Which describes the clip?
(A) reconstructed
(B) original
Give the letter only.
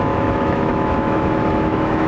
A